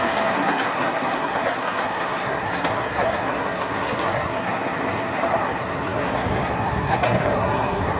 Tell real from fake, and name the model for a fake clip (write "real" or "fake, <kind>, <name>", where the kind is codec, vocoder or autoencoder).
fake, codec, SNAC